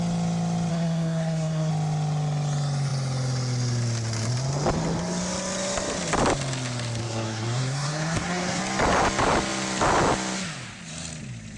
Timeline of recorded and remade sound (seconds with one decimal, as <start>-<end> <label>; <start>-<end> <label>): 0.0-0.7 recorded; 0.7-1.7 remade; 1.7-7.0 recorded; 7.0-8.6 remade; 8.6-11.6 recorded